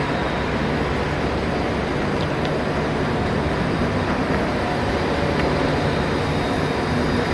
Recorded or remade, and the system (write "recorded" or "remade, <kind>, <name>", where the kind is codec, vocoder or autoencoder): recorded